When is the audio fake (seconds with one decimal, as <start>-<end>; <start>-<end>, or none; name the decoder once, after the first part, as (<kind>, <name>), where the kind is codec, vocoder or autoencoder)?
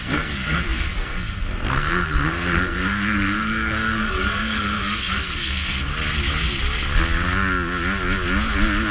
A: 0.0-5.9 (codec, SNAC)